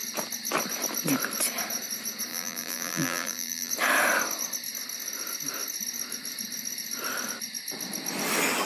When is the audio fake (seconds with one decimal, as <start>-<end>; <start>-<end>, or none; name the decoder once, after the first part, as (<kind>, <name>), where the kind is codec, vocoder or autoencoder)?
2.3-3.7 (vocoder, BigVGAN v2)